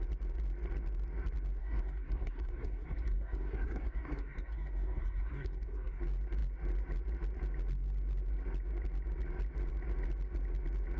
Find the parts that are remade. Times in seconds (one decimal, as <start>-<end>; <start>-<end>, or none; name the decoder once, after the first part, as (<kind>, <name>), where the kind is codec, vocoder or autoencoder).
1.6-6.0 (codec, SNAC)